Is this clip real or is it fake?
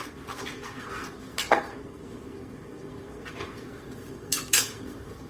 fake